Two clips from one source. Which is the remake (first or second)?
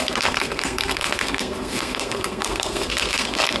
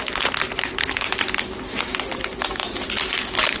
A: first